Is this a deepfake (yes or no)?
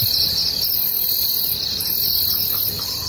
no